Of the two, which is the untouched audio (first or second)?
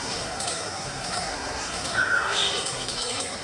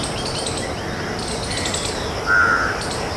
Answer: second